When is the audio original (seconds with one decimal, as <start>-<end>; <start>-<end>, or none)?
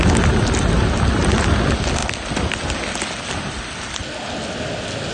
0.0-5.1